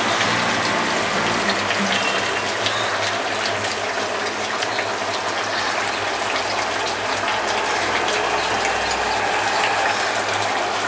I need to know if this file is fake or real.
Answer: real